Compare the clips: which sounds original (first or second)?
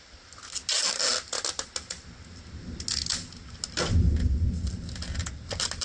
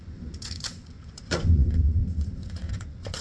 first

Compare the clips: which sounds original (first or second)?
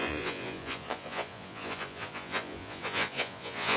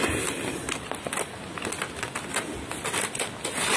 second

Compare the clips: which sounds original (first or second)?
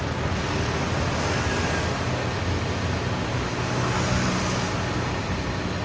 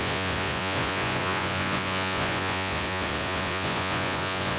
first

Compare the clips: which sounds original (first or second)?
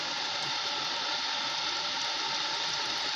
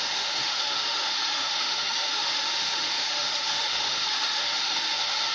first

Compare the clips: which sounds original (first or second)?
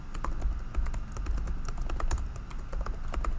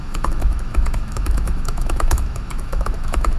first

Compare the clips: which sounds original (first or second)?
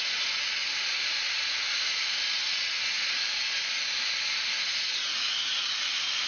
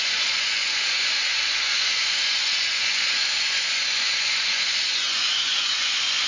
first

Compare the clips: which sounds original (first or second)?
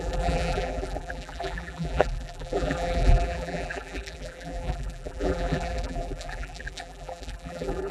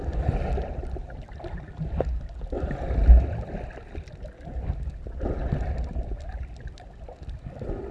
second